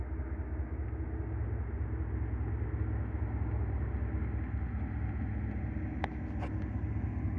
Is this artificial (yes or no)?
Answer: no